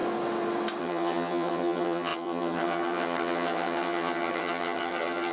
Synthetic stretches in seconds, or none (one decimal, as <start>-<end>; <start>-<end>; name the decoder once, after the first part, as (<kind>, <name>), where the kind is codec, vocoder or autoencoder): 0.8-5.3 (vocoder, HiFi-GAN)